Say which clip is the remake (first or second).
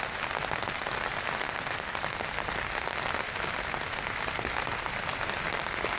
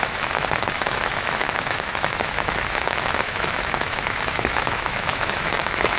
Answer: second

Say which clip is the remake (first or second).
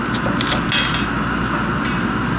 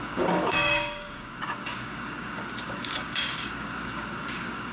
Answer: second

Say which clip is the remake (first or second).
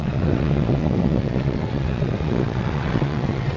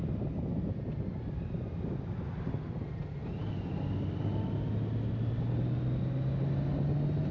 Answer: first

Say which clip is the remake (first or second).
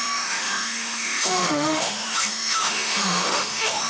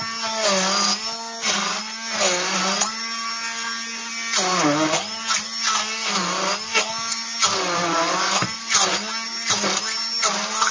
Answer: first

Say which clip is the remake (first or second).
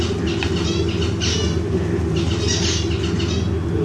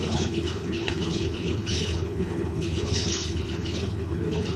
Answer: second